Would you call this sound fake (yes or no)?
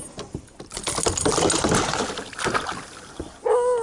no